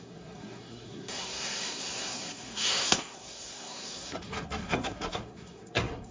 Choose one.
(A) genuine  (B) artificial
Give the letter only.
B